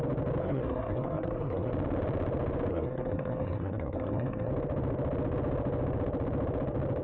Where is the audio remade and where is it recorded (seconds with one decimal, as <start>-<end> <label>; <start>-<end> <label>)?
0.0-0.4 recorded; 0.4-1.7 remade; 1.7-2.7 recorded; 2.7-4.5 remade; 4.5-7.0 recorded